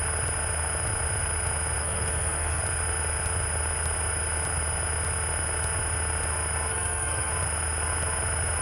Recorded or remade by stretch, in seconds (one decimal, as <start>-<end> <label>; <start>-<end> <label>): 0.0-1.8 recorded; 1.8-2.6 remade; 2.6-6.7 recorded; 6.7-7.3 remade; 7.3-8.6 recorded